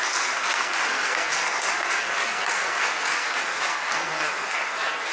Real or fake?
fake